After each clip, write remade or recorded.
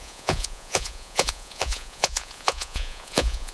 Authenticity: remade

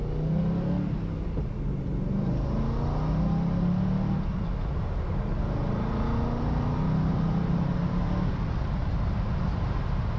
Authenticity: recorded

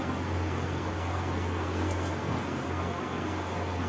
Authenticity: remade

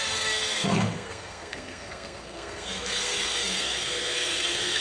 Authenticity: remade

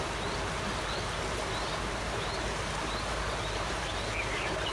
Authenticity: recorded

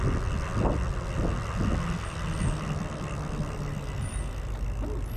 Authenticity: recorded